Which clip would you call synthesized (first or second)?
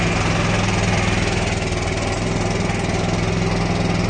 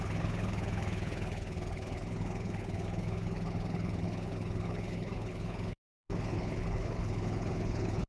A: second